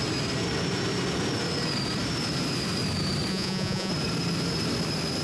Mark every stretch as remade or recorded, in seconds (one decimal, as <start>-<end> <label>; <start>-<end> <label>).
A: 0.0-3.3 recorded; 3.3-3.9 remade; 3.9-5.2 recorded